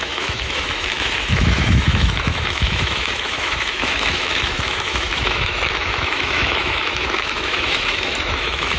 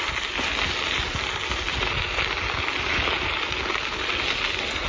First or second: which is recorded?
second